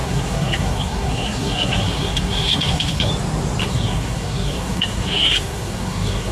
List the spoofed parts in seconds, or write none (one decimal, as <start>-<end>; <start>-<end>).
0.0-3.1; 3.6-6.3